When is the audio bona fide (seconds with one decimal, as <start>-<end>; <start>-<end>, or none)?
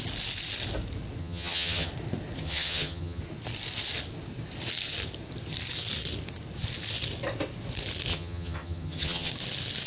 0.0-1.2; 1.9-2.4; 3.2-8.1; 9.3-9.9